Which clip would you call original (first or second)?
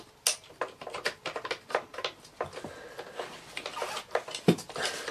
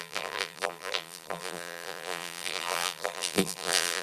first